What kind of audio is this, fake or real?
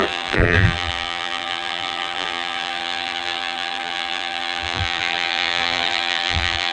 fake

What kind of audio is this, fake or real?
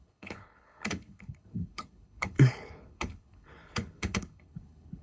fake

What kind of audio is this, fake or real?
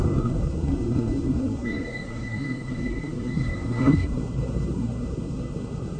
fake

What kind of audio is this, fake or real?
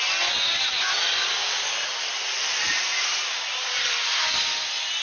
real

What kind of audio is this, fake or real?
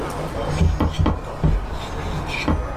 real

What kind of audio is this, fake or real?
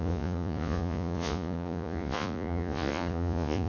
fake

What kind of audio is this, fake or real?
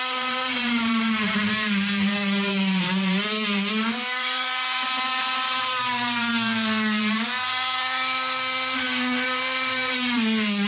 fake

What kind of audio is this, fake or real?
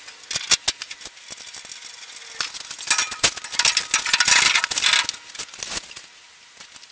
real